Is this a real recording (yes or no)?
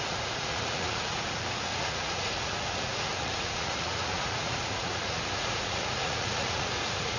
no